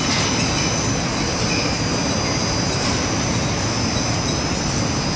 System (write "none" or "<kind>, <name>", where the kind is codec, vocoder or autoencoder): none